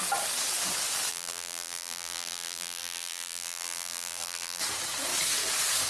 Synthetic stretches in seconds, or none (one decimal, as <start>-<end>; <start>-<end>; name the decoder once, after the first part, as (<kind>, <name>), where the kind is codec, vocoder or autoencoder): 1.1-4.6 (vocoder, BigVGAN v2)